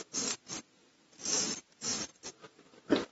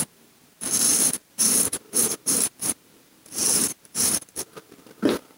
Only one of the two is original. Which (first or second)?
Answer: first